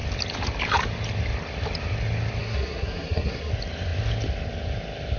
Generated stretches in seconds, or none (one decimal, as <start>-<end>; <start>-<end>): 2.4-3.5